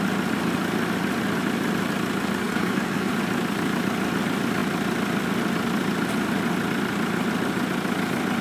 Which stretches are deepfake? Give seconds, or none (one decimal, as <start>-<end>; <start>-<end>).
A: 2.4-3.1